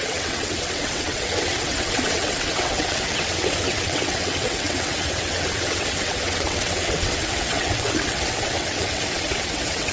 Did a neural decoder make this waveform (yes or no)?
yes